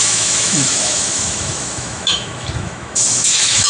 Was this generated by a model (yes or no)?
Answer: yes